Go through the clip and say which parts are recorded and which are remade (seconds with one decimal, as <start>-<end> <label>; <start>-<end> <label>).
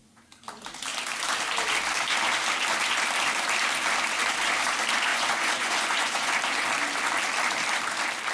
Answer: 0.0-5.1 recorded; 5.1-6.3 remade; 6.3-8.3 recorded